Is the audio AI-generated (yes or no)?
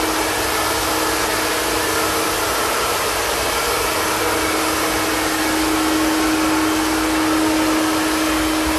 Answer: no